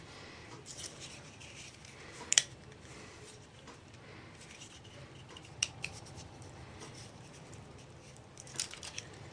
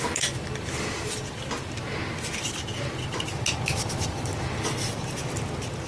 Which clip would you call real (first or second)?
second